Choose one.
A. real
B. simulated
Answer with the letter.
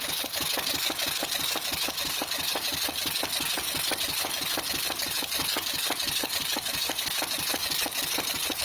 B